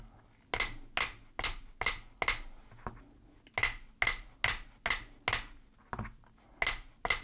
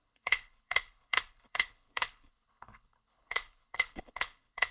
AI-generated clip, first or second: second